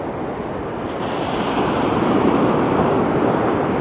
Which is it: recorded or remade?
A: recorded